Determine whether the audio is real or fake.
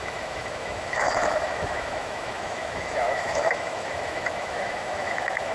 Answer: fake